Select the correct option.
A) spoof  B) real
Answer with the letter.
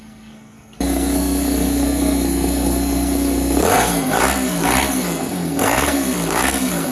A